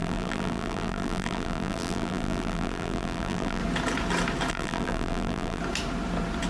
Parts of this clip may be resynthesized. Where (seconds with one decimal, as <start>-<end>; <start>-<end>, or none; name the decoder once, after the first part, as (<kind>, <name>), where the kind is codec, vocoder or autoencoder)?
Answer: 0.0-3.6 (vocoder, BigVGAN v2); 4.5-5.6